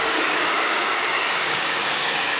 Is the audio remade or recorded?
remade